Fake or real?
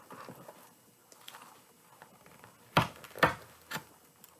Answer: real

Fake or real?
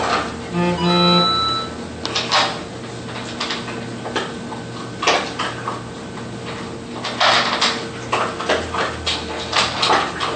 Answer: real